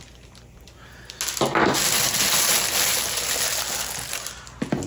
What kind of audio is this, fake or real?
real